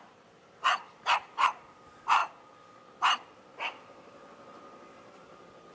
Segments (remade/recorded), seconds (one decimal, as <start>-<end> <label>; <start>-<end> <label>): 0.0-2.2 remade; 2.2-5.7 recorded